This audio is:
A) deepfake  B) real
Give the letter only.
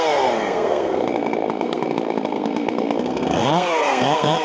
A